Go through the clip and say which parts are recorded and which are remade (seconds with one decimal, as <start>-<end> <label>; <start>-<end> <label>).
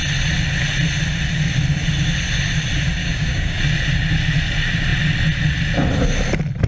0.0-3.0 recorded; 3.0-3.6 remade; 3.6-6.7 recorded